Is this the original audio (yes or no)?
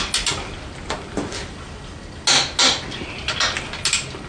yes